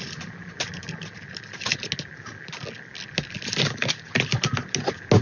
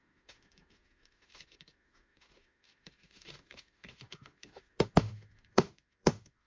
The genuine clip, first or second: first